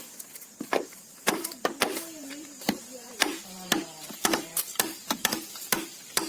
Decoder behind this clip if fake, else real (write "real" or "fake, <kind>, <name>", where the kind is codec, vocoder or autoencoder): fake, vocoder, BigVGAN v2